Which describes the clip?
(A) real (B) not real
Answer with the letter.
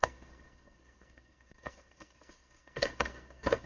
B